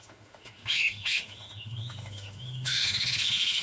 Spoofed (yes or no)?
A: yes